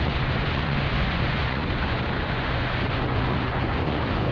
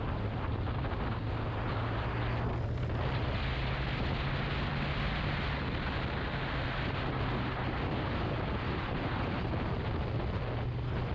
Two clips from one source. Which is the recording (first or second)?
second